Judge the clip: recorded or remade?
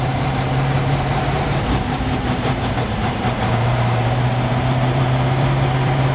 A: remade